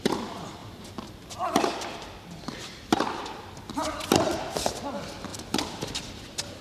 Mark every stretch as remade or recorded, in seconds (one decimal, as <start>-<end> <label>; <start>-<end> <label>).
0.0-5.3 recorded; 5.3-6.6 remade